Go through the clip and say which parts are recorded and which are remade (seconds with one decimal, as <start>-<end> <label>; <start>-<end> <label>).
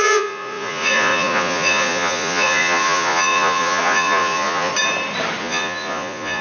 0.0-4.7 remade; 4.7-5.4 recorded; 5.4-6.4 remade